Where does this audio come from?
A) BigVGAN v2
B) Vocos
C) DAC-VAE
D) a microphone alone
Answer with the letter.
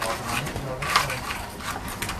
D